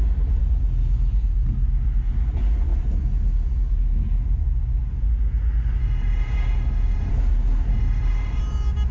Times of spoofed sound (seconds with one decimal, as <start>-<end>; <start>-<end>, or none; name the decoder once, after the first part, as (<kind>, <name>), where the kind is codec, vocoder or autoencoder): 5.8-7.1 (autoencoder, DAC-VAE); 7.7-8.4